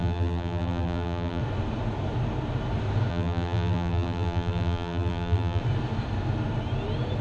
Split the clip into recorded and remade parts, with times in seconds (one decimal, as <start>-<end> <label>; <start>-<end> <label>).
0.0-1.4 remade; 1.4-3.1 recorded; 3.1-5.6 remade; 5.6-7.2 recorded